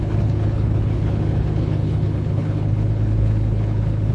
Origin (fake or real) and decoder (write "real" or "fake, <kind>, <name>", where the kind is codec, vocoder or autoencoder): fake, codec, HILCodec